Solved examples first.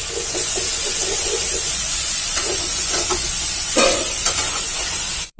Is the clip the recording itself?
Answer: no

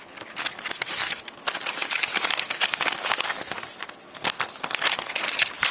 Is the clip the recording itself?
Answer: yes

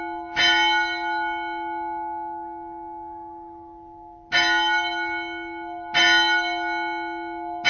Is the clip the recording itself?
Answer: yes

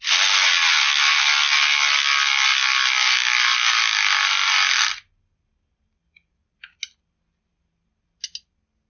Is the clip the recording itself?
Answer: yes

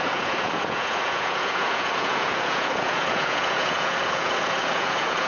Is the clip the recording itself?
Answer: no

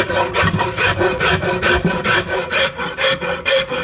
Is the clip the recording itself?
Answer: yes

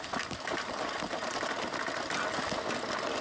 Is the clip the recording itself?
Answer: yes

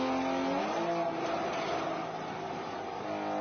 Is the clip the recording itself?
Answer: yes